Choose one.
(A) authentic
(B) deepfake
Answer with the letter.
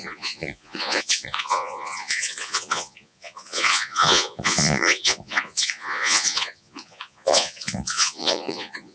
B